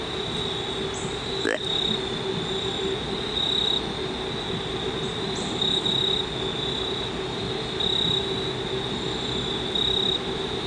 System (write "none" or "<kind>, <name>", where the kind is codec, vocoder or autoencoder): none